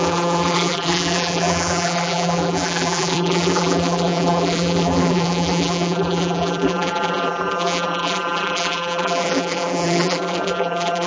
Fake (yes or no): yes